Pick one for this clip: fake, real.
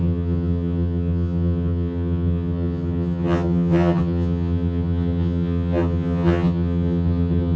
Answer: fake